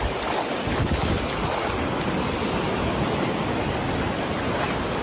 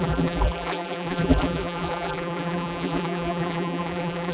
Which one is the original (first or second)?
first